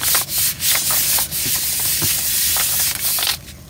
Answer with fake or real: real